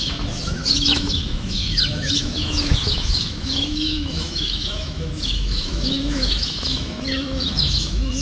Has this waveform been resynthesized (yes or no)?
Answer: yes